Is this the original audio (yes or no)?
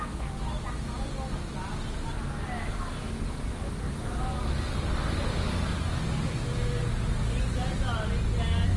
yes